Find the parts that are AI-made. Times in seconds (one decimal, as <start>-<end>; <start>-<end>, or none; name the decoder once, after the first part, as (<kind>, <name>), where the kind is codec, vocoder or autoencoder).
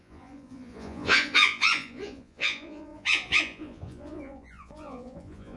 0.0-5.6 (vocoder, Vocos)